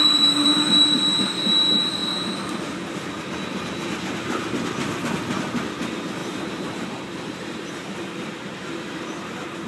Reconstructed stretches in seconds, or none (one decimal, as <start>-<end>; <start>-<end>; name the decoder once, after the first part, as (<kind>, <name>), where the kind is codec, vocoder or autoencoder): 6.2-7.7 (vocoder, BigVGAN v2)